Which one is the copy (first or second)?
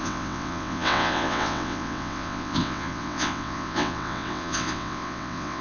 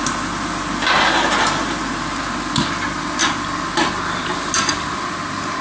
first